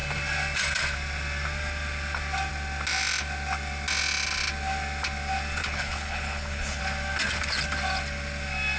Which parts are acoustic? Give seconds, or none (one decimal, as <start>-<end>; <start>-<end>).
0.0-5.6; 6.8-8.8

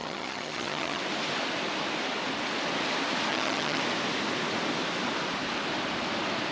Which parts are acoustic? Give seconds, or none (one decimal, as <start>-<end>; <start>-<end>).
1.0-3.3; 3.8-6.5

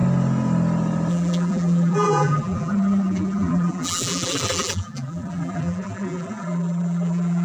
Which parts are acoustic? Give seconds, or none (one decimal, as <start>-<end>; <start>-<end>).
0.0-1.1

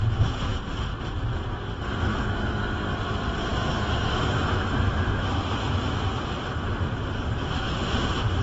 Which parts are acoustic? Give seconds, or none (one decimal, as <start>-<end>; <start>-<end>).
0.0-2.1; 2.6-3.5; 6.0-8.4

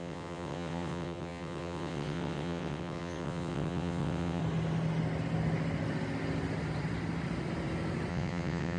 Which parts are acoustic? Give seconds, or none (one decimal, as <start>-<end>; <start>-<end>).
4.4-8.1

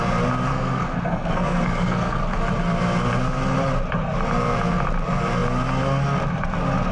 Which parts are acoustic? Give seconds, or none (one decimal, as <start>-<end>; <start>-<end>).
0.0-0.5; 2.4-6.9

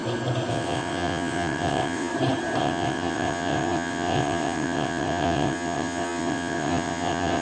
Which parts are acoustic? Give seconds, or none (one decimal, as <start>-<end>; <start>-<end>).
0.0-0.5; 2.1-2.6